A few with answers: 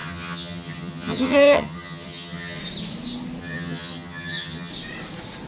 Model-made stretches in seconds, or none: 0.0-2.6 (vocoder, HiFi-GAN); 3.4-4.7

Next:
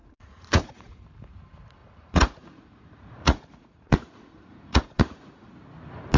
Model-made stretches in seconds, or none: 0.0-1.0 (vocoder, Vocos); 1.8-5.5

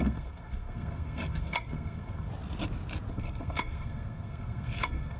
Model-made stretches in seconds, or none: 0.0-2.3 (codec, SNAC); 3.1-5.2

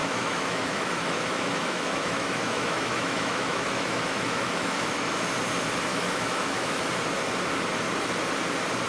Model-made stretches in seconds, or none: 0.0-5.1 (autoencoder, DAC-VAE); 5.9-6.9

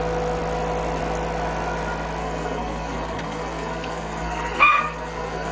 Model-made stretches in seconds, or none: 2.2-5.5 (codec, SNAC)

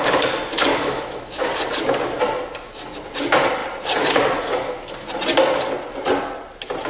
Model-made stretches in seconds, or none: 0.7-1.3 (autoencoder, DAC-VAE)

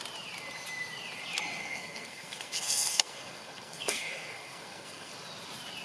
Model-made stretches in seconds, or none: 1.6-5.1 (codec, SNAC)

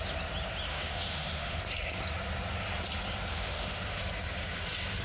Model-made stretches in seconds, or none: 0.7-1.6 (autoencoder, DAC-VAE); 3.3-4.0